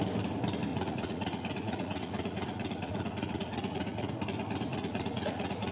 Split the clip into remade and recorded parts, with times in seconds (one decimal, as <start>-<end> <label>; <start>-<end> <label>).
0.0-0.7 recorded; 0.7-4.1 remade; 4.1-4.7 recorded; 4.7-5.7 remade